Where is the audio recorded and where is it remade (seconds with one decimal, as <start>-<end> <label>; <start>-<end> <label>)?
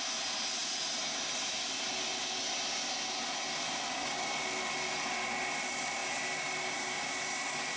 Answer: 0.0-7.8 recorded